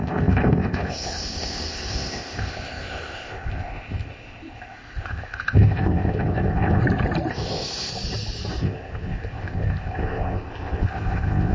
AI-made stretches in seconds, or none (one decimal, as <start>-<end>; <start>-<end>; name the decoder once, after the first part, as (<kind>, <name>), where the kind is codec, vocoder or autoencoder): 0.0-6.8 (codec, ZipCodec); 7.3-7.9; 8.6-11.5

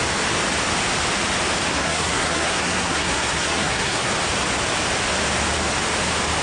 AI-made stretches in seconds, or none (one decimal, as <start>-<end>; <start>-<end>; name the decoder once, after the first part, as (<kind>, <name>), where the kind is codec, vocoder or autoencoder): 1.7-4.1 (codec, SNAC)

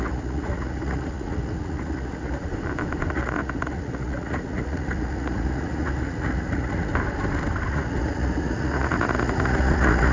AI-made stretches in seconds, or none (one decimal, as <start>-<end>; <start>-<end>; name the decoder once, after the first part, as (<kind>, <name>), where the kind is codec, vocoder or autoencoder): 0.0-2.5 (vocoder, Vocos); 3.1-6.9; 7.7-10.1

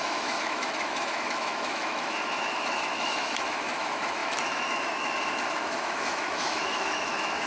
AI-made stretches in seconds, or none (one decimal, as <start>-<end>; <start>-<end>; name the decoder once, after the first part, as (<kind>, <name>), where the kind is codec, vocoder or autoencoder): 0.0-7.5 (autoencoder, DAC-VAE)